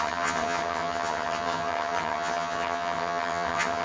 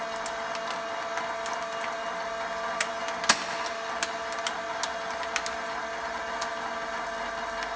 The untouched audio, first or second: second